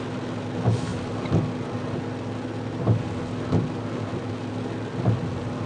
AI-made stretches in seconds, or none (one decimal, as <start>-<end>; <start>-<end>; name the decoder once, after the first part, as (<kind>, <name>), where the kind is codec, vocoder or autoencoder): none